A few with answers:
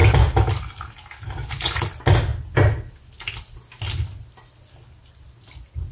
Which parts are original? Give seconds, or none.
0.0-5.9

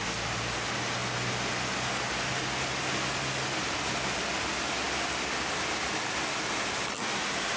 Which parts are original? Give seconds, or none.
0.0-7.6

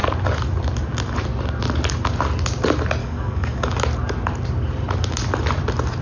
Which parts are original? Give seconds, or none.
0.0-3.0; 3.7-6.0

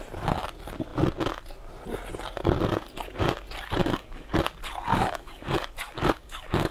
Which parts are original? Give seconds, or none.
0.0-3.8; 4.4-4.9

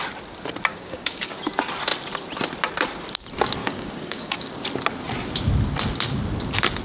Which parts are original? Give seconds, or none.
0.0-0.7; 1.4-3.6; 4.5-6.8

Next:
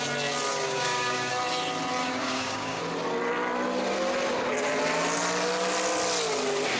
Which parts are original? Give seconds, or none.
0.0-0.5; 1.3-2.0; 2.8-6.8

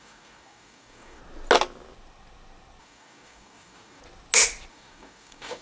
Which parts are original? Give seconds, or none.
1.2-2.8; 4.0-4.7

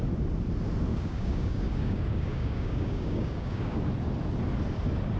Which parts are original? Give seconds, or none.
0.0-0.9; 3.9-5.2